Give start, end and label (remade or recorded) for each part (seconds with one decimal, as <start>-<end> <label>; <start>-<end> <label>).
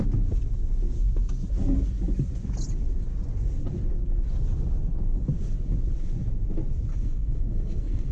0.0-6.9 recorded; 6.9-8.1 remade